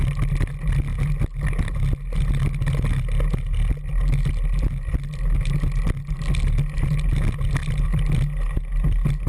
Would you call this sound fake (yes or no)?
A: no